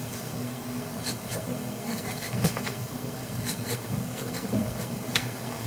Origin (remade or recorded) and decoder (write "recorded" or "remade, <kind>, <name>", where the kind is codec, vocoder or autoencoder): remade, codec, SNAC